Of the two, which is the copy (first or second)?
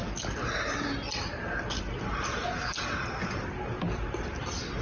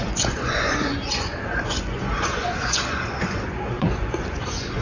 second